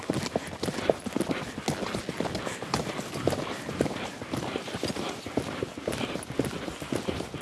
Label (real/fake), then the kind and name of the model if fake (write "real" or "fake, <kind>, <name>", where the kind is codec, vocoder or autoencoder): real